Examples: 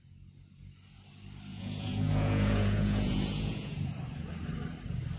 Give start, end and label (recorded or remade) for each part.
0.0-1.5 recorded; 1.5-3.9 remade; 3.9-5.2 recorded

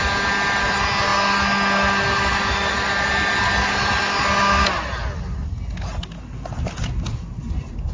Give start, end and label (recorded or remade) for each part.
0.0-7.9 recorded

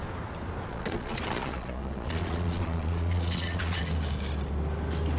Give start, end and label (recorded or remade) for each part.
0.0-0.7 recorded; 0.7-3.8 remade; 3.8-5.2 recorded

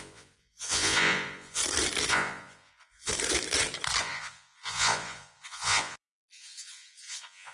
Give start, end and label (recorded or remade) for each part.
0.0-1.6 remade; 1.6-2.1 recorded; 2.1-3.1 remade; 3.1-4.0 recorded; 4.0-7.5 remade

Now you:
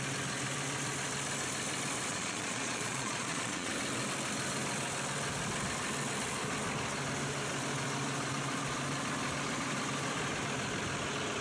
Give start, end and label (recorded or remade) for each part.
0.0-2.1 recorded; 2.1-3.7 remade; 3.7-11.4 recorded

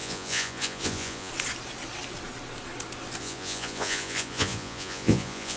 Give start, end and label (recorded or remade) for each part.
0.0-1.3 remade; 1.3-3.2 recorded; 3.2-5.6 remade

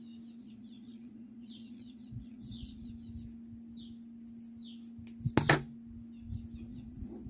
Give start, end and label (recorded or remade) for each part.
0.0-0.4 recorded; 0.4-2.9 remade; 2.9-6.7 recorded; 6.7-7.3 remade

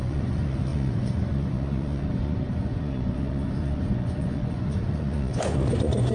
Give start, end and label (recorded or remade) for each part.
0.0-6.1 remade